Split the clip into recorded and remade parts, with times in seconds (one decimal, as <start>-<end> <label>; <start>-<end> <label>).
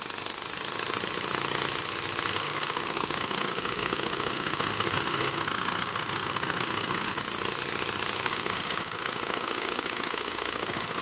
0.0-2.3 recorded; 2.3-7.2 remade; 7.2-8.2 recorded; 8.2-11.0 remade